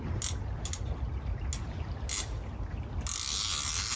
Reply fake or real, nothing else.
real